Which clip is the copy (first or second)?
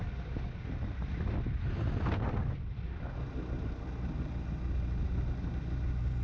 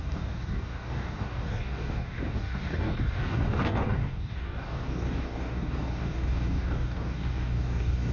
second